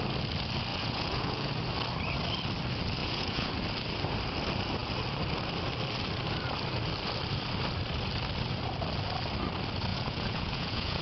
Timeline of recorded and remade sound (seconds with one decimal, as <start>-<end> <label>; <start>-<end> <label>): 0.0-0.7 recorded; 0.7-1.5 remade; 1.5-3.0 recorded; 3.0-3.5 remade; 3.5-9.9 recorded; 9.9-11.0 remade